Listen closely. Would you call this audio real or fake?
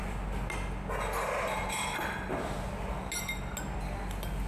real